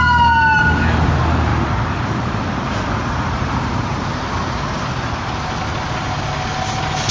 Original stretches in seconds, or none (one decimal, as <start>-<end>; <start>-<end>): 0.0-1.5; 5.6-7.1